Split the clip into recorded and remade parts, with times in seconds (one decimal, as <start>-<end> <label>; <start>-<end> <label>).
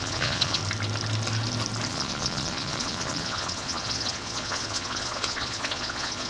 0.0-0.6 remade; 0.6-1.9 recorded; 1.9-6.3 remade